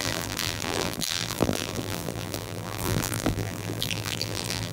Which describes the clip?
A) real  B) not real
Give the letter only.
B